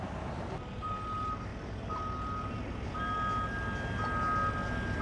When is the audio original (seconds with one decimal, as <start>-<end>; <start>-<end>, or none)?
0.0-5.0